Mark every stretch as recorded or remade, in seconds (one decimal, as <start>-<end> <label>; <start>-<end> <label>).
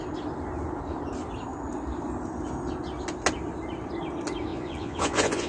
0.0-4.5 recorded; 4.5-5.5 remade